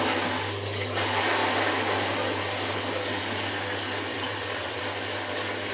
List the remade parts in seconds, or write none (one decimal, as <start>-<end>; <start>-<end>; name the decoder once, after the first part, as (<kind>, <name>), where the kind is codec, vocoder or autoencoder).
4.1-4.8 (vocoder, WaveNeXt)